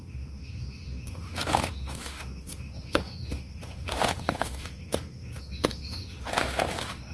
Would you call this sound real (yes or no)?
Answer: no